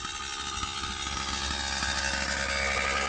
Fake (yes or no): no